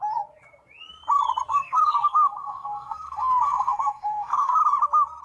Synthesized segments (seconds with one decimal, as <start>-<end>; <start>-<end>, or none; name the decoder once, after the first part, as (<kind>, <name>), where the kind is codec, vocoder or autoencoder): 1.5-4.6 (codec, SNAC)